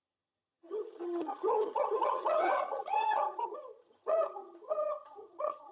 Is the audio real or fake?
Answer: fake